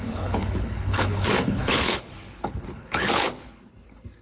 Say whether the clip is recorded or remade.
remade